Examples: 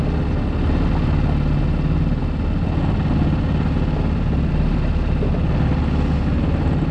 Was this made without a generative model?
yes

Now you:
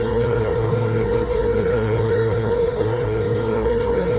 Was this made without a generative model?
no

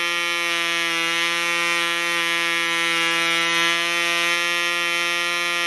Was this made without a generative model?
yes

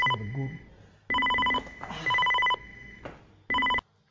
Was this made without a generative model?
yes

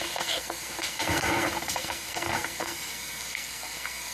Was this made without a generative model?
no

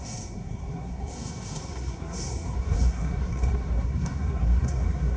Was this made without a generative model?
no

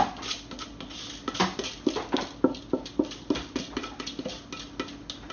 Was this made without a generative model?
yes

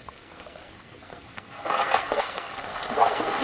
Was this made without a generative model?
no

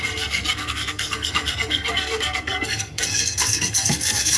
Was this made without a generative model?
no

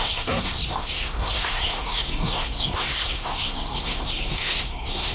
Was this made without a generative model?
no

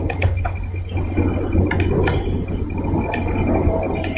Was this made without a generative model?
yes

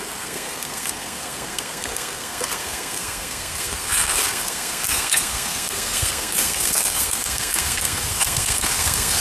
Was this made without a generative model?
no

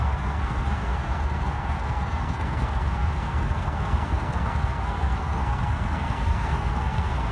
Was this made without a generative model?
no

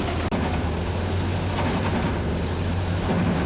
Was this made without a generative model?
yes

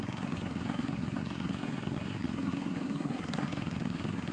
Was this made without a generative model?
no